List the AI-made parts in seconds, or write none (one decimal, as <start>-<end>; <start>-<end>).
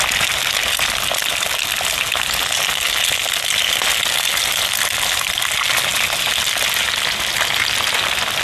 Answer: none